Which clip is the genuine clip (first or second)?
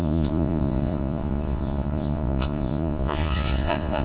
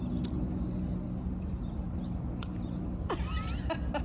second